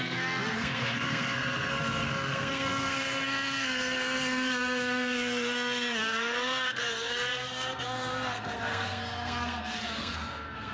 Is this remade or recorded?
remade